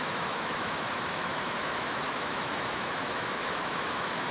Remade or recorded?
remade